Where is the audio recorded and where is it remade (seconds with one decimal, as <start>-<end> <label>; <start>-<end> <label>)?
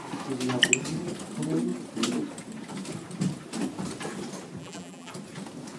0.0-4.6 recorded; 4.6-5.1 remade; 5.1-5.8 recorded